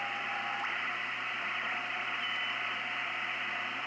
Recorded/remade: remade